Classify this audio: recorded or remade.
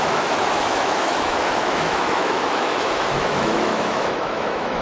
remade